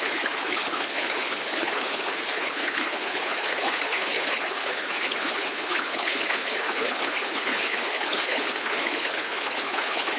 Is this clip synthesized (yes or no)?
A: yes